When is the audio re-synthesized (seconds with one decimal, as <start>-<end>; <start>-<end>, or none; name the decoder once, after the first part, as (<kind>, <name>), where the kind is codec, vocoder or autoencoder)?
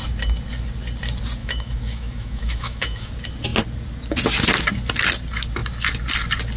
1.4-3.1 (autoencoder, DAC-VAE)